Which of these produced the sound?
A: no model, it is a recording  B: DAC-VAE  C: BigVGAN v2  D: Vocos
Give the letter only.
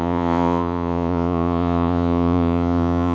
D